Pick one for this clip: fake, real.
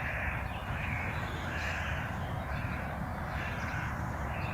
real